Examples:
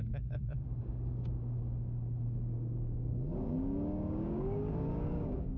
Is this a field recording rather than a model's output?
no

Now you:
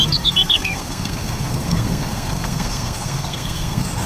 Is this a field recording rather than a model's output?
no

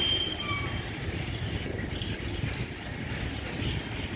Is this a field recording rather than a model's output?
yes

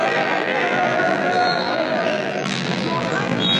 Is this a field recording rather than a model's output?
no